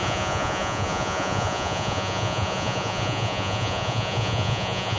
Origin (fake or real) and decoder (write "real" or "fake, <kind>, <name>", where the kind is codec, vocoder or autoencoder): fake, vocoder, Vocos